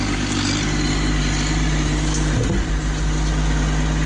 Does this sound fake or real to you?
real